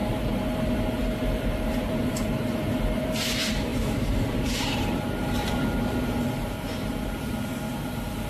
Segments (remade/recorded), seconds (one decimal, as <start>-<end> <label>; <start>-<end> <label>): 0.0-8.3 remade